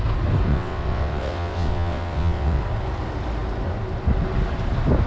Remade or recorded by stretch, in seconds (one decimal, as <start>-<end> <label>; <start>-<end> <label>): 0.0-0.5 recorded; 0.5-2.6 remade; 2.6-5.1 recorded